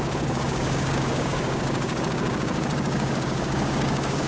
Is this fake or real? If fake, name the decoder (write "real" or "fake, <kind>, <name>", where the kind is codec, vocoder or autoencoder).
fake, codec, DAC